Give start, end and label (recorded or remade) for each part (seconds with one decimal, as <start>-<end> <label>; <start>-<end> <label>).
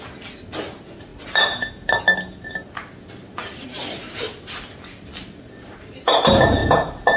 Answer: 0.0-7.2 recorded